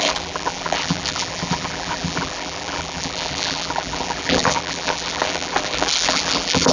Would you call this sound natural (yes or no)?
no